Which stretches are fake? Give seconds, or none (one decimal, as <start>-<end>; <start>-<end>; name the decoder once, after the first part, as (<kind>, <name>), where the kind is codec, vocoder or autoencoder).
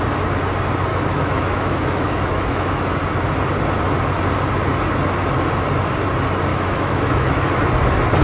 0.9-2.8 (autoencoder, DAC-VAE); 6.5-7.5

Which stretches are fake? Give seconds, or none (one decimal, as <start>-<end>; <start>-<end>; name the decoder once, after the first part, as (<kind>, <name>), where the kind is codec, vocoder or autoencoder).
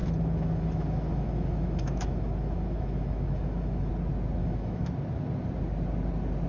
0.0-3.9 (autoencoder, DAC-VAE); 4.4-4.9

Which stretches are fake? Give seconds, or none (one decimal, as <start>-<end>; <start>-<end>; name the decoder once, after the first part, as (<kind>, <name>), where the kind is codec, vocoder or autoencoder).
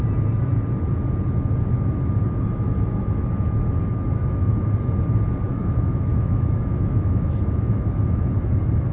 5.5-8.2 (autoencoder, DAC-VAE)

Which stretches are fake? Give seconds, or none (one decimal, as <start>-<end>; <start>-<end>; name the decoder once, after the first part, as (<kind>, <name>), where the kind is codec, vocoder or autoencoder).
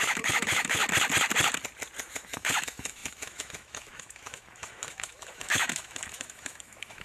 0.0-0.8 (autoencoder, DAC-VAE); 2.0-7.0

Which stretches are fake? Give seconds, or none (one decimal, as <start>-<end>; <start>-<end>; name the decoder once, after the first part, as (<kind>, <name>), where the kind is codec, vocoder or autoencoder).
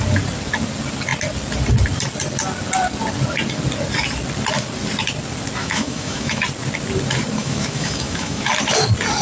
5.6-6.4 (autoencoder, DAC-VAE); 7.4-8.5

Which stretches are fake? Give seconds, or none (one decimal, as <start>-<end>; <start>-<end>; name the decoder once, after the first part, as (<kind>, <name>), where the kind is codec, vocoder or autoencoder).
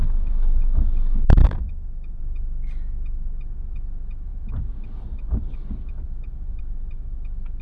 1.4-2.2 (autoencoder, DAC-VAE)